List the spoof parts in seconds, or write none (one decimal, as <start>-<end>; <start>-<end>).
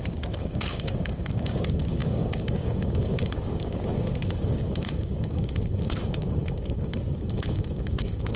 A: 0.0-8.4